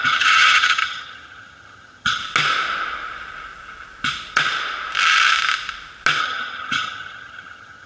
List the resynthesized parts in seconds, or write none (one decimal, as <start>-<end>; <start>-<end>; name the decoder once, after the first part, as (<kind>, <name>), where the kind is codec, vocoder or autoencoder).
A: 0.0-2.2 (vocoder, HiFi-GAN); 6.2-7.9